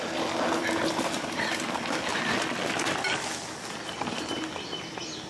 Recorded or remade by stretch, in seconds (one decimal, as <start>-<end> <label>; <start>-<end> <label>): 0.0-5.3 recorded